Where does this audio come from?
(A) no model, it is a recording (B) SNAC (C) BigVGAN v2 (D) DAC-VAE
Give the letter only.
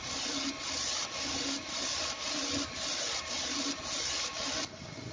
A